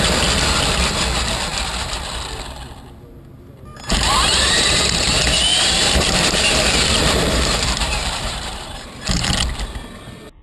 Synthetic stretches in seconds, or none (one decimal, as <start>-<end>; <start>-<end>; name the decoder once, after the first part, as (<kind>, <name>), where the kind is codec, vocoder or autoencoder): 3.7-4.8 (vocoder, BigVGAN v2); 5.5-9.3